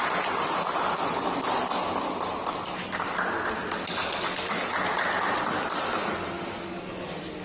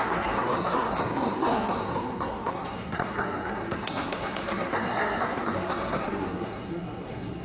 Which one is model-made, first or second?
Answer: second